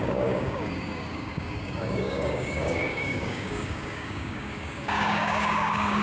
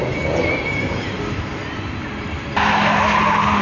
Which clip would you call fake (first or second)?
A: first